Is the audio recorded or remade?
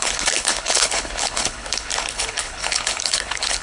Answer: remade